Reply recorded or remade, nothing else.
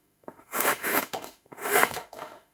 remade